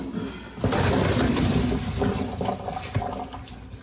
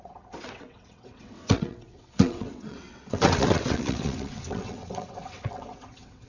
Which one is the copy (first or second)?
second